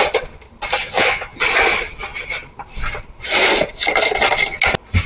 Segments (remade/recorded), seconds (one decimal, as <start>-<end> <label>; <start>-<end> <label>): 0.0-0.8 recorded; 0.8-1.4 remade; 1.4-5.1 recorded